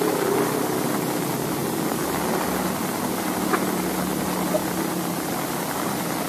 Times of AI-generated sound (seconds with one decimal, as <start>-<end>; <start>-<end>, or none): none